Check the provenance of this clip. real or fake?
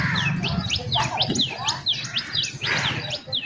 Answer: real